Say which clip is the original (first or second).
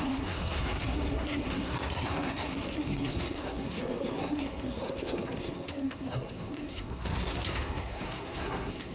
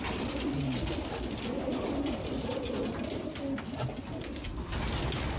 second